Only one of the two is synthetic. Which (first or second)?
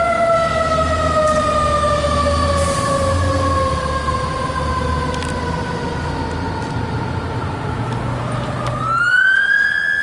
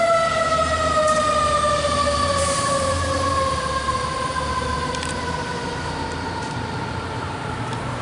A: second